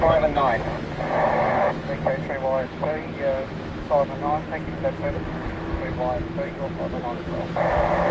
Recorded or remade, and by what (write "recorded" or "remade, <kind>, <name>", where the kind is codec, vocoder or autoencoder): remade, autoencoder, DAC-VAE